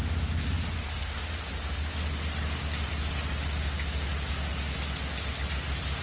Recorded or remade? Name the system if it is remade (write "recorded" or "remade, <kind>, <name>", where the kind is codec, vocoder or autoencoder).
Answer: recorded